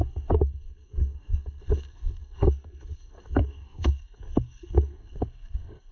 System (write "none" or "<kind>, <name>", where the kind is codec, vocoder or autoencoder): codec, SNAC